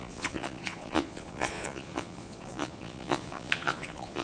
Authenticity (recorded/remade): remade